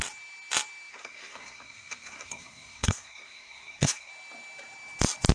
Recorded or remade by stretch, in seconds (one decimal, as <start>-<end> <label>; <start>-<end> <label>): 0.0-0.9 recorded; 0.9-4.1 remade; 4.1-5.3 recorded